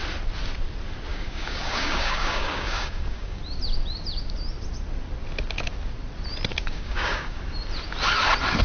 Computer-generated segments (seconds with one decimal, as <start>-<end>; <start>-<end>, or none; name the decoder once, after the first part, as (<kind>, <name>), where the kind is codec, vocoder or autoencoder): 1.1-3.4 (codec, DAC); 6.5-7.4